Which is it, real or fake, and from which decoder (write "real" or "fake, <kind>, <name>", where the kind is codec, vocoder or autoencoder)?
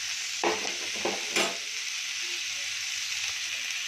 real